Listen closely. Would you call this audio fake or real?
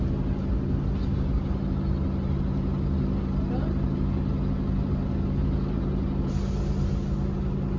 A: real